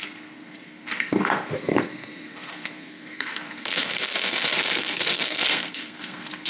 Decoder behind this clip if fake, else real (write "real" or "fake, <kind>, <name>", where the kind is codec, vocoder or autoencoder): fake, codec, SNAC